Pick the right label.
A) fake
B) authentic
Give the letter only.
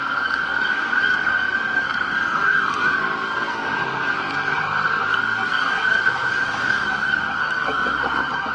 A